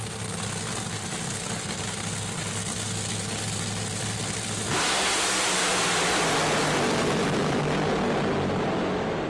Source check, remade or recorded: recorded